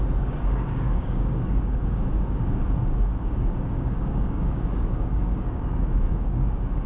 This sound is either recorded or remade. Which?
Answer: remade